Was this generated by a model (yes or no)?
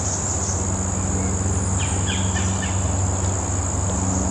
no